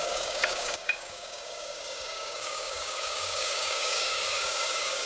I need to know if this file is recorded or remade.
remade